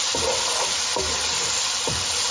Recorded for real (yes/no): no